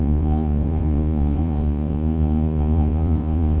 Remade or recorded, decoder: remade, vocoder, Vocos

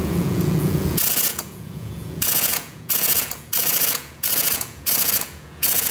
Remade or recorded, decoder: remade, vocoder, Vocos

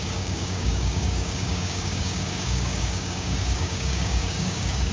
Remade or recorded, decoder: remade, codec, DAC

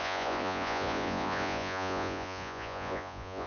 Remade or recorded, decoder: remade, vocoder, Vocos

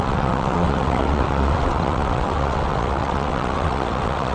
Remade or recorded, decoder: remade, vocoder, WaveNeXt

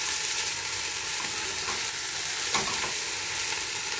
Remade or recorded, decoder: remade, vocoder, BigVGAN v2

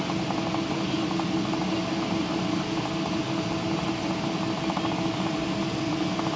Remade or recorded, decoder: recorded